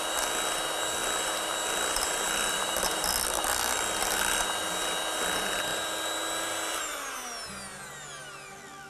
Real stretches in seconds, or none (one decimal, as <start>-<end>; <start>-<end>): 0.0-1.0; 3.1-5.7; 6.8-8.9